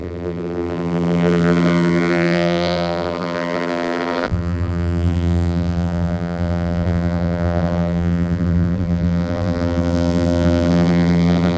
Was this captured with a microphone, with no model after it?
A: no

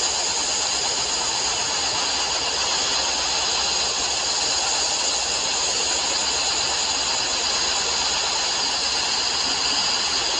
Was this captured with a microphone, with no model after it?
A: yes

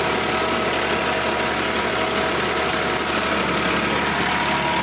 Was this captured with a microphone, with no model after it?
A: yes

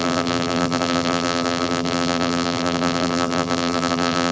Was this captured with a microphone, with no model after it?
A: no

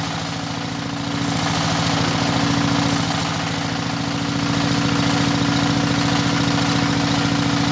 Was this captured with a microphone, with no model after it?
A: yes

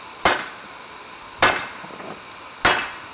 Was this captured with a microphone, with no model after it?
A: yes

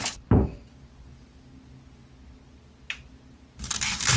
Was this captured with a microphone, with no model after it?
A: yes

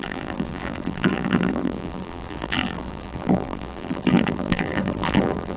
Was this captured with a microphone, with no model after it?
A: no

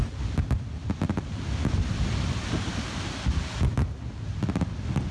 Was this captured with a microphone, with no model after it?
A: yes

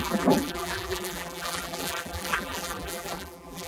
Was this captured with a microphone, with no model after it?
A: no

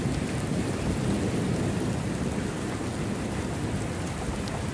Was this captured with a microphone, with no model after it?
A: yes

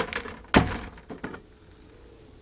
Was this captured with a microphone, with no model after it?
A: yes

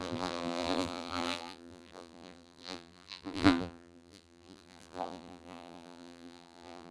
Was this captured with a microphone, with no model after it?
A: no